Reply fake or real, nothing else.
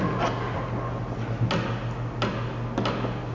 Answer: real